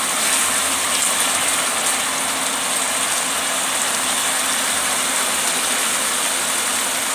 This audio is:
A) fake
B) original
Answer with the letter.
B